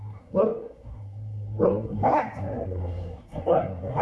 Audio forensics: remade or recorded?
remade